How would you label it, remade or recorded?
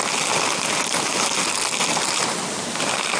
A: recorded